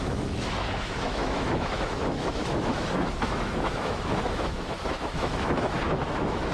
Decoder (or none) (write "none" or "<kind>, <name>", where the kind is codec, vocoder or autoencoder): autoencoder, DAC-VAE